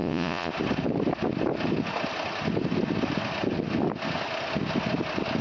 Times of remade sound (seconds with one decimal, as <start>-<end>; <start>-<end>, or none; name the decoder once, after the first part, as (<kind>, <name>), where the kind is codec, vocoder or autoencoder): 0.0-0.5 (vocoder, Vocos)